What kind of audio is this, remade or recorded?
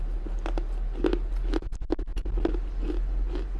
recorded